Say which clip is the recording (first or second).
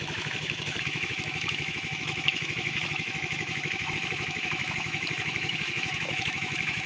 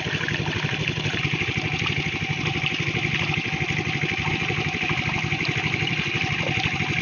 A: second